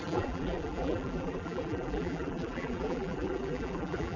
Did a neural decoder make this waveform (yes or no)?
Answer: yes